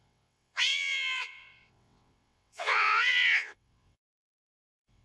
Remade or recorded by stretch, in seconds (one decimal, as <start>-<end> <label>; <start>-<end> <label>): 0.0-5.0 remade